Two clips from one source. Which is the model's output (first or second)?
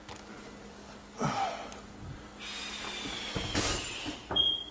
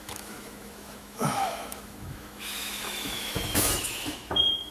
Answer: second